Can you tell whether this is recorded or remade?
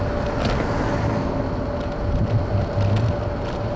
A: recorded